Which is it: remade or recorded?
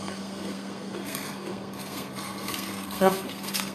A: remade